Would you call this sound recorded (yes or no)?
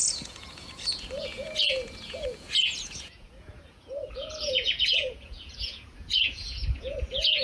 no